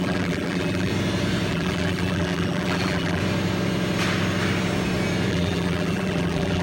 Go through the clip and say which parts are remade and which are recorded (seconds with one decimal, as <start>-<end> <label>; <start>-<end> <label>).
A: 0.0-0.9 remade; 0.9-1.5 recorded; 1.5-3.2 remade; 3.2-5.3 recorded; 5.3-6.6 remade